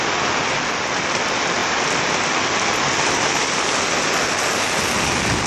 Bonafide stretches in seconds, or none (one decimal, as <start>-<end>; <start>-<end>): 0.0-5.5